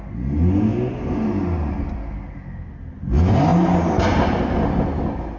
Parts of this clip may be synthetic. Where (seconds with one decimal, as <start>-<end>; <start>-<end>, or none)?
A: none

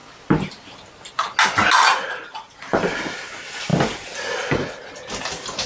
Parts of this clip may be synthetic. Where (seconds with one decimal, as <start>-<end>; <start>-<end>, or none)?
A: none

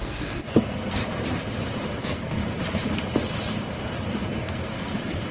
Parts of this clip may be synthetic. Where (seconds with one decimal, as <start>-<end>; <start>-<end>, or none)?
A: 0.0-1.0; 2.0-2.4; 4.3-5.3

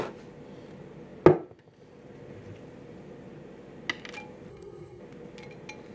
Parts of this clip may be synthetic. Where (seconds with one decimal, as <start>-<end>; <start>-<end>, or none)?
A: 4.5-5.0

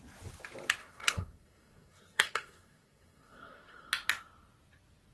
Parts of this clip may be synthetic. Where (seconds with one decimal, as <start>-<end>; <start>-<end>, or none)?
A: 0.8-3.9